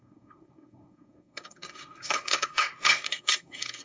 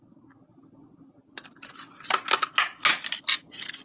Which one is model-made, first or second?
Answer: first